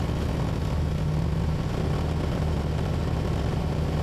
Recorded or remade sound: recorded